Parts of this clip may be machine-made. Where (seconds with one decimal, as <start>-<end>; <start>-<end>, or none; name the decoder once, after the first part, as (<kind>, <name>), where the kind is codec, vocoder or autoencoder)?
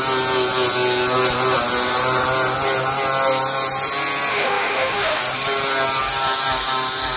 4.3-5.2 (autoencoder, DAC-VAE)